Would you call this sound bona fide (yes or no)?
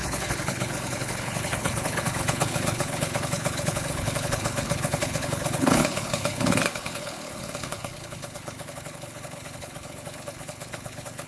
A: no